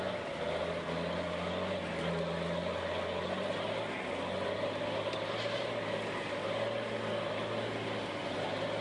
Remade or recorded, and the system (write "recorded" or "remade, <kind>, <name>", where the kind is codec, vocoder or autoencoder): recorded